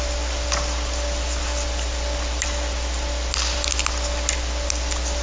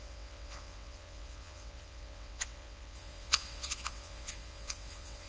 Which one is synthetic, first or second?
second